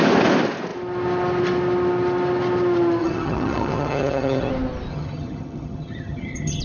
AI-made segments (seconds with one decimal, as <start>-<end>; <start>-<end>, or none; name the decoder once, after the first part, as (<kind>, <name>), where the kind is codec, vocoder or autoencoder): 3.0-4.5 (vocoder, HiFi-GAN); 4.9-6.6